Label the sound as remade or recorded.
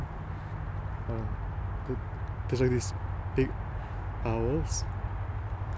recorded